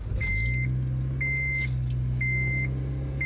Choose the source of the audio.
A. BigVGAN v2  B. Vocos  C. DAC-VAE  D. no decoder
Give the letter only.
D